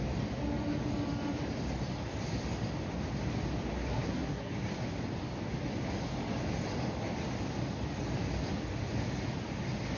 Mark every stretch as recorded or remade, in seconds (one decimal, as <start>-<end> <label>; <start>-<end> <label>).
0.0-3.9 recorded; 3.9-4.5 remade; 4.5-10.0 recorded